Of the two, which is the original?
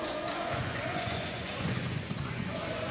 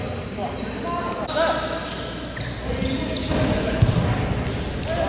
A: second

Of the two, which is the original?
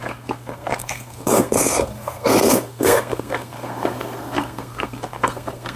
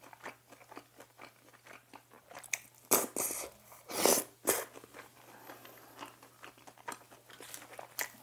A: second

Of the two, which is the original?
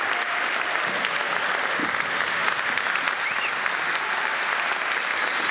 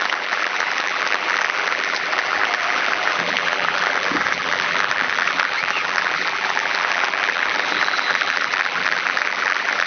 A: first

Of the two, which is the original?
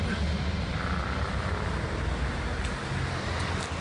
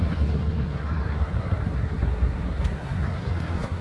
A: first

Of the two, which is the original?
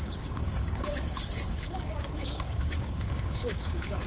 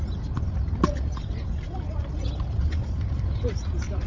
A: second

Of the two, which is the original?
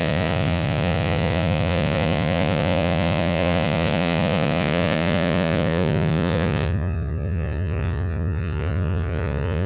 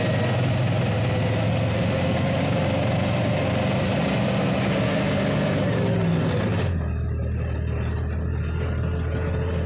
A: second